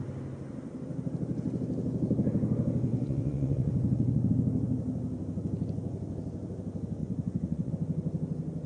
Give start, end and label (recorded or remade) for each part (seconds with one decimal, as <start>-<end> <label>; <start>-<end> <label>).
0.0-2.9 recorded; 2.9-4.3 remade; 4.3-7.0 recorded; 7.0-7.7 remade; 7.7-8.7 recorded